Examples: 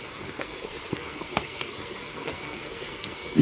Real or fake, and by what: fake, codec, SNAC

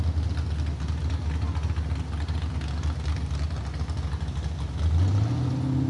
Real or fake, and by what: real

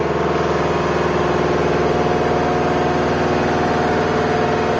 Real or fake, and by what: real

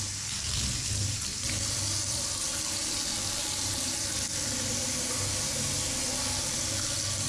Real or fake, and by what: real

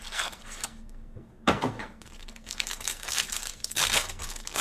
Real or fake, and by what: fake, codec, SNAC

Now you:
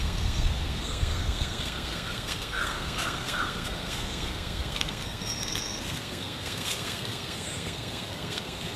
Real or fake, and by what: fake, codec, SNAC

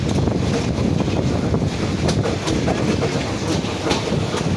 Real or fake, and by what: real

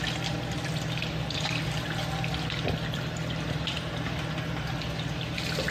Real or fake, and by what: real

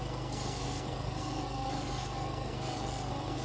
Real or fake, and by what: fake, codec, SNAC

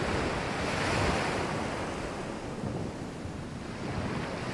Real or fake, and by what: real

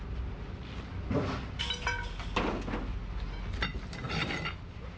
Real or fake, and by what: real